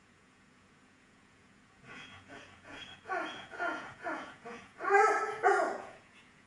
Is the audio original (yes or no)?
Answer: no